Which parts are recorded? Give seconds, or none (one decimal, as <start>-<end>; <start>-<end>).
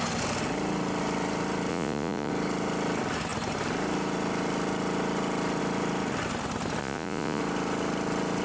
0.0-1.7; 2.3-6.8; 7.4-8.4